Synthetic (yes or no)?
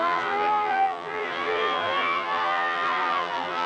yes